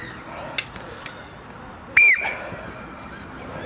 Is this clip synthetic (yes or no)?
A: no